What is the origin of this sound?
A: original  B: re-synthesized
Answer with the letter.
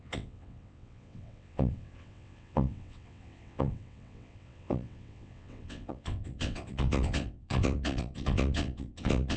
B